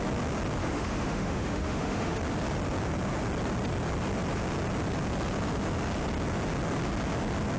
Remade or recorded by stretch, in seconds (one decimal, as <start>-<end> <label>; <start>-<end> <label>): 0.0-0.6 recorded; 0.6-2.2 remade; 2.2-7.6 recorded